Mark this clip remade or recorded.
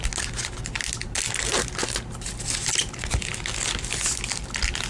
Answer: recorded